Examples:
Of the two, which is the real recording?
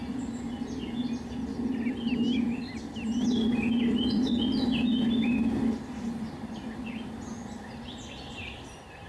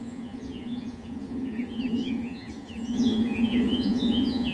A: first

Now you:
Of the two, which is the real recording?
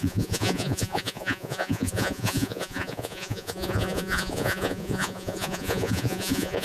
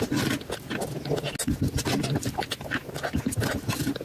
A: second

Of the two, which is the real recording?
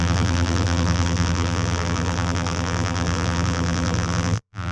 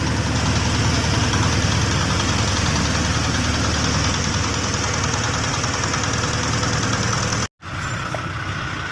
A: second